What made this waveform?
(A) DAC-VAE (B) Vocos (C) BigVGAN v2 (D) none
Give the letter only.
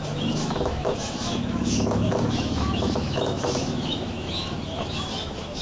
A